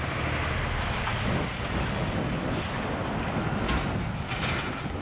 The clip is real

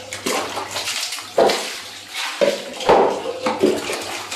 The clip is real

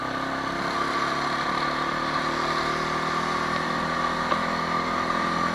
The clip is real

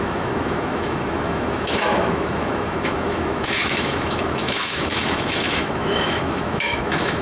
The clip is fake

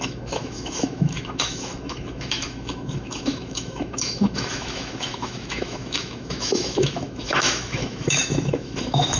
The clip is fake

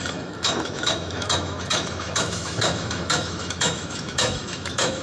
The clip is fake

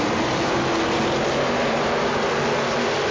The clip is real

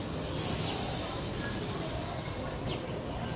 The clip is real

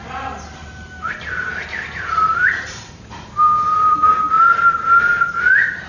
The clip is real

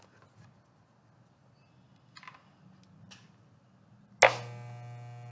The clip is real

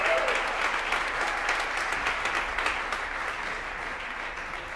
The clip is real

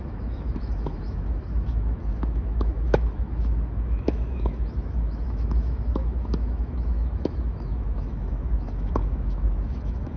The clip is fake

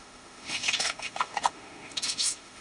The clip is fake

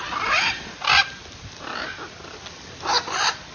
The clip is real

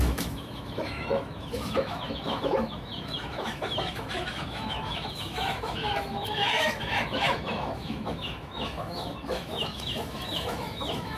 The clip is fake